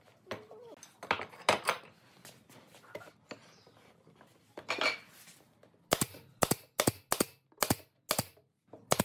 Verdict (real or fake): real